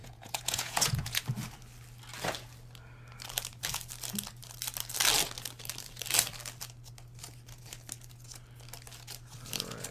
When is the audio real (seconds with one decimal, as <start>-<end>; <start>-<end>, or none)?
1.2-9.9